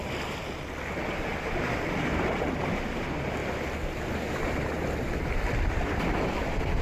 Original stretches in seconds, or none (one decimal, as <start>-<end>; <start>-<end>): 0.0-6.8